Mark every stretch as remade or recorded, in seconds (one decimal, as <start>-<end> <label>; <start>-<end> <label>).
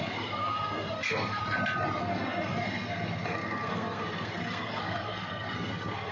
0.0-1.4 remade; 1.4-2.0 recorded; 2.0-6.1 remade